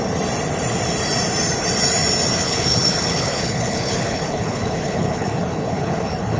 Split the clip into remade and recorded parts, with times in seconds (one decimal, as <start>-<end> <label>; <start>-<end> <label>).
0.0-2.4 recorded; 2.4-6.4 remade